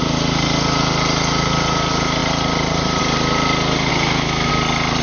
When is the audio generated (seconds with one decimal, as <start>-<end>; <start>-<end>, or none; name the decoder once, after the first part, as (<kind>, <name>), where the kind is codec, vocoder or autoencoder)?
3.9-4.5 (autoencoder, DAC-VAE)